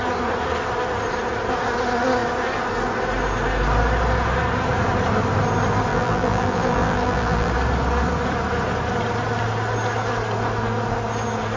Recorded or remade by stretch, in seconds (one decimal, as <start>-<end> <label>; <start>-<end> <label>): 0.0-5.9 recorded; 5.9-7.5 remade; 7.5-11.6 recorded